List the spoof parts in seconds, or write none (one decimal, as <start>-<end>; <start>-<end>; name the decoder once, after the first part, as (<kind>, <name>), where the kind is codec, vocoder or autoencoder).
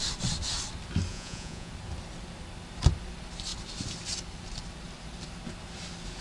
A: 1.1-1.7 (vocoder, Vocos)